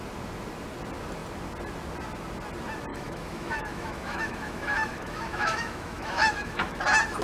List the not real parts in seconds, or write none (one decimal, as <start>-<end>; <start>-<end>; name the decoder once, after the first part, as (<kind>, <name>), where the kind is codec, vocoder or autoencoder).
2.9-6.8 (autoencoder, DAC-VAE)